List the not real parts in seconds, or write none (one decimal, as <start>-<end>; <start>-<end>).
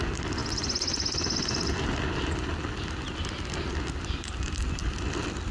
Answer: none